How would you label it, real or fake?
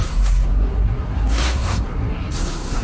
fake